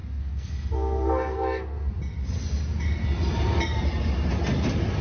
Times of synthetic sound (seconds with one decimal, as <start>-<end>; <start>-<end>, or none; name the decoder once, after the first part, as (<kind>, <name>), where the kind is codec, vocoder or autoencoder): 0.0-1.9 (codec, SNAC)